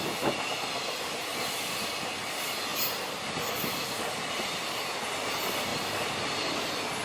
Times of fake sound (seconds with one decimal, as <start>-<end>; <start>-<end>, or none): none